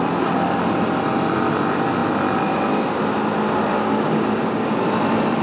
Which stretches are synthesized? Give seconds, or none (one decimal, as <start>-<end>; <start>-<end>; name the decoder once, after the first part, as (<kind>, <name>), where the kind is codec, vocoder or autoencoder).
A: 3.7-4.8 (codec, DAC)